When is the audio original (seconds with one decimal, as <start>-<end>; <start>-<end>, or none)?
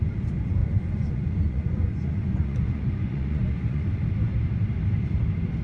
0.0-0.6; 4.0-5.6